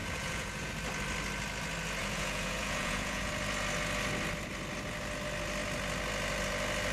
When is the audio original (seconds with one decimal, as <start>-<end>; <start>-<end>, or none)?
0.7-2.0; 3.3-6.9